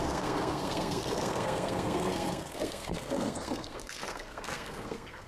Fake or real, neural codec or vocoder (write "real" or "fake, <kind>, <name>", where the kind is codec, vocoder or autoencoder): fake, codec, SNAC